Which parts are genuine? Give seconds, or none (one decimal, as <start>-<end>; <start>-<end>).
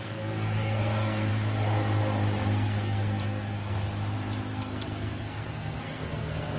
1.3-2.5; 3.8-4.5